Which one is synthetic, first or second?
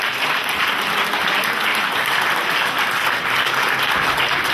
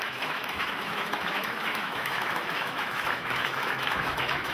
second